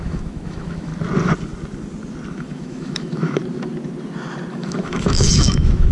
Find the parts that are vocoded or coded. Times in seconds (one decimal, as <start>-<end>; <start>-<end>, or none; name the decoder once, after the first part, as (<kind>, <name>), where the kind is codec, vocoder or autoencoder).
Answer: 0.0-0.9 (autoencoder, DAC-VAE); 2.3-3.4; 4.5-5.9